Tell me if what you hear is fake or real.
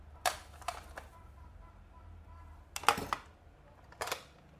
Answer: real